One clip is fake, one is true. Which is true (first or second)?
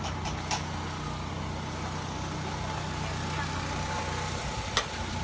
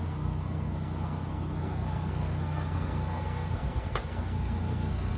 first